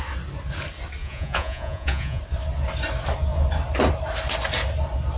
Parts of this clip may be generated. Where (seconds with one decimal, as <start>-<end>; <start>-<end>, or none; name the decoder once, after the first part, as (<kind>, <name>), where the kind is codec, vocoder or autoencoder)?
1.0-2.2 (vocoder, Vocos)